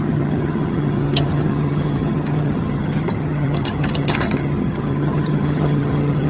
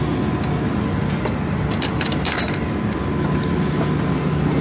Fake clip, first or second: first